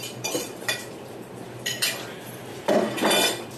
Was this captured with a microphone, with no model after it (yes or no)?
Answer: no